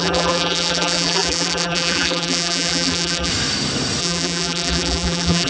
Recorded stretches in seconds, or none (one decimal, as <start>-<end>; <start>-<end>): 3.3-4.0